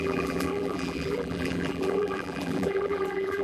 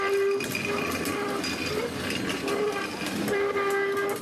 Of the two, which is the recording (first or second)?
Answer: second